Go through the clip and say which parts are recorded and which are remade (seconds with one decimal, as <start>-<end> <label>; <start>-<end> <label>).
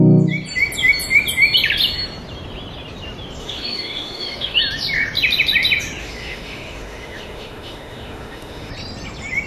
0.0-3.4 recorded; 3.4-4.6 remade; 4.6-6.0 recorded; 6.0-8.7 remade; 8.7-9.5 recorded